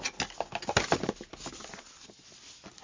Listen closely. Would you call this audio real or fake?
real